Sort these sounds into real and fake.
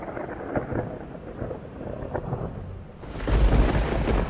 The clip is real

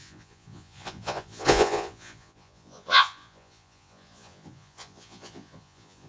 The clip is fake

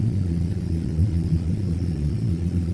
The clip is fake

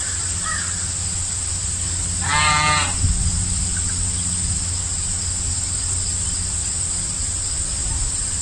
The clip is real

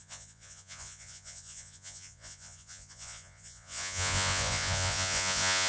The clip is fake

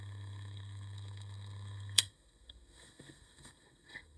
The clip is fake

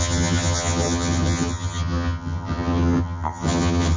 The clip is fake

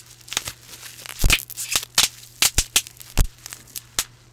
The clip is real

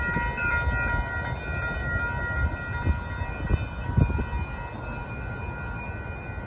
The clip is real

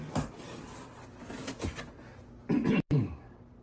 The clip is real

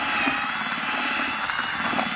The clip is real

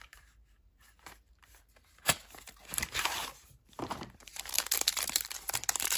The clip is fake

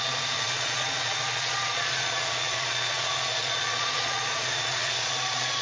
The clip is fake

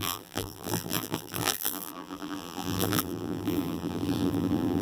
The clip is fake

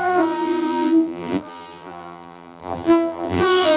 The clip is fake